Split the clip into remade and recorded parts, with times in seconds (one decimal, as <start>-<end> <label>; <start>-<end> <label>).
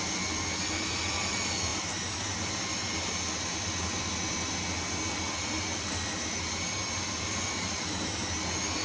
0.0-8.8 recorded